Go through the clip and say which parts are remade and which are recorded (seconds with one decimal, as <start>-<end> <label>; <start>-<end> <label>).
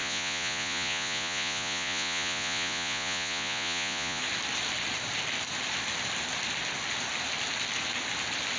0.0-4.2 remade; 4.2-8.6 recorded